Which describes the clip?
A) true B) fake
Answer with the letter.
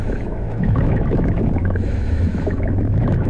B